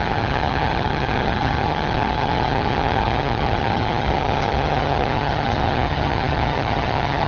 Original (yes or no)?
no